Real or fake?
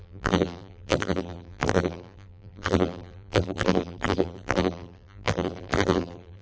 fake